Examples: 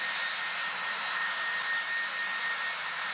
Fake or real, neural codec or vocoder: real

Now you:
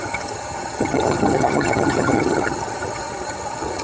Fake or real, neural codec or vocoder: fake, vocoder, HiFi-GAN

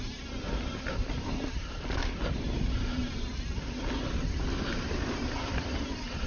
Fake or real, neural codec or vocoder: real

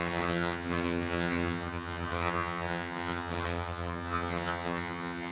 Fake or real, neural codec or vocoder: fake, vocoder, HiFi-GAN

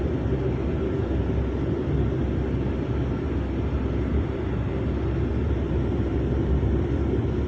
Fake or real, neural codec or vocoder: real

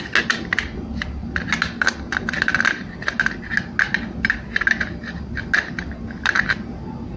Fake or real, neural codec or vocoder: real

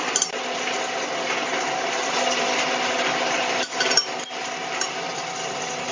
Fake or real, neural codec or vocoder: real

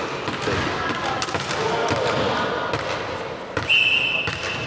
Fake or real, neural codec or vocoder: real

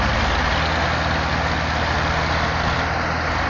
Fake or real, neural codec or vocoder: real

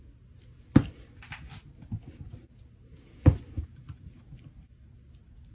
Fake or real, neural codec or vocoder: real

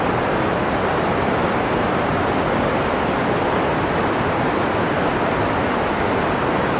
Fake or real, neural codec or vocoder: real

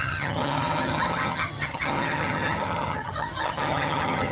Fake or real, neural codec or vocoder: fake, vocoder, HiFi-GAN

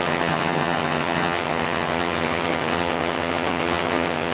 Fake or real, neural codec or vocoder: fake, vocoder, HiFi-GAN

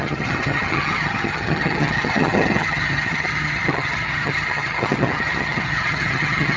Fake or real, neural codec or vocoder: fake, vocoder, HiFi-GAN